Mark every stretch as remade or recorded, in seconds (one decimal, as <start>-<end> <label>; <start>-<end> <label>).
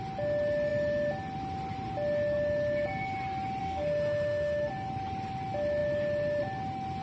0.0-3.6 recorded; 3.6-4.7 remade; 4.7-7.0 recorded